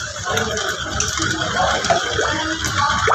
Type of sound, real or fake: real